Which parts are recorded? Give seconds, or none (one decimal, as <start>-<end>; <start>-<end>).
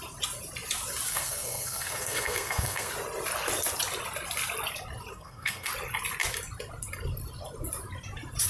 0.0-1.1; 2.9-5.1; 5.7-8.5